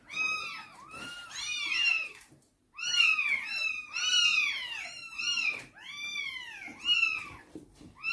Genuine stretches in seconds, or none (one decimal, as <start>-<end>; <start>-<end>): none